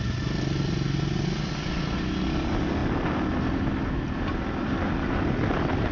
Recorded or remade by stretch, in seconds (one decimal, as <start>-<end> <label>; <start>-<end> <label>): 0.0-5.9 recorded